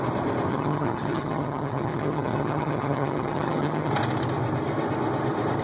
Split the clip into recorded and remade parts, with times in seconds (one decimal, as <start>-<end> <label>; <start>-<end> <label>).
0.0-0.5 recorded; 0.5-3.9 remade; 3.9-5.6 recorded